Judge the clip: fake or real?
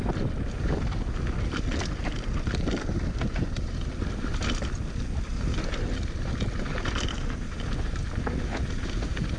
real